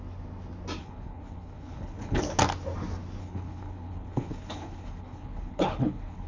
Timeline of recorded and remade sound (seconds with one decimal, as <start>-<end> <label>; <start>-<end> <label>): 0.0-0.8 recorded; 0.8-2.2 remade; 2.2-3.2 recorded; 3.2-6.3 remade